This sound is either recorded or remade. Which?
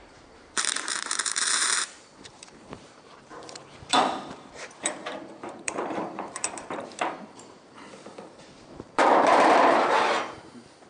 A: remade